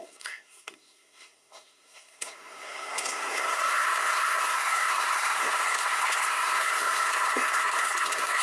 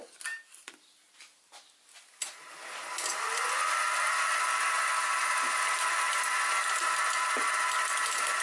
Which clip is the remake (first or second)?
first